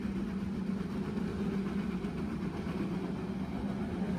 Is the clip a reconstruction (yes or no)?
no